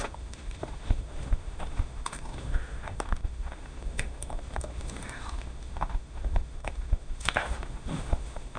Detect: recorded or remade remade